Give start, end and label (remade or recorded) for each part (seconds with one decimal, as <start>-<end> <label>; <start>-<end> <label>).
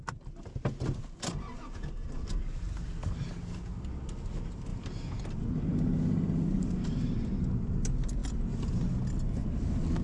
0.0-4.7 recorded; 4.7-5.2 remade; 5.2-10.0 recorded